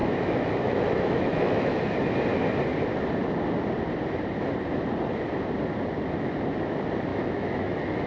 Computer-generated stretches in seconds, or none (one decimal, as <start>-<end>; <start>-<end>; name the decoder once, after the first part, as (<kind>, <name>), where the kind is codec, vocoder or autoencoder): 0.0-1.8 (autoencoder, DAC-VAE); 7.1-8.1